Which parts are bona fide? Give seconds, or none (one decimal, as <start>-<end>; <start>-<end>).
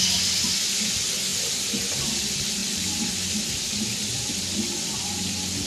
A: 0.0-5.7